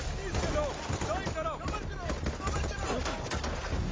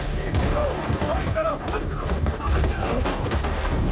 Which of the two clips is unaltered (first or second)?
first